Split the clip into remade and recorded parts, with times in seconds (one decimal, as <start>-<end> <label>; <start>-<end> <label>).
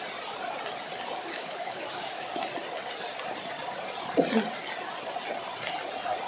0.0-1.2 recorded; 1.2-2.3 remade; 2.3-6.3 recorded